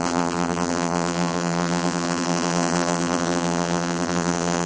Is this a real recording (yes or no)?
no